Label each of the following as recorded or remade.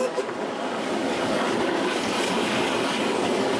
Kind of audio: remade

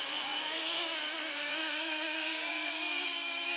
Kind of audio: remade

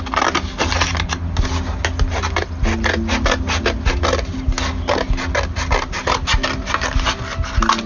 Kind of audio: recorded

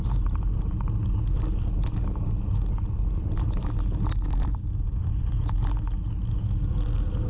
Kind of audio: recorded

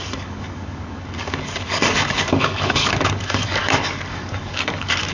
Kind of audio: remade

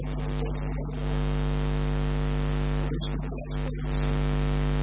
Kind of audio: recorded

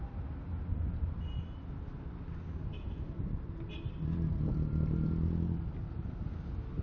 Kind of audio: recorded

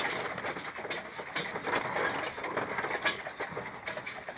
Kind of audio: recorded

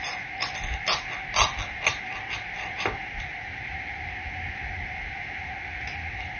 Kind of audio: recorded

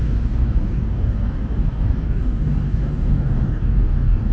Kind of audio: remade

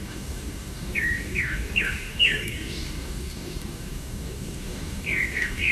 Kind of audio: remade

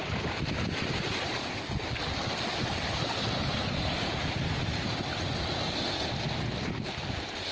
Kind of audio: recorded